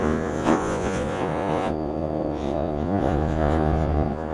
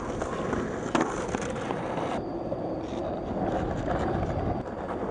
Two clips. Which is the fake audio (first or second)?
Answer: first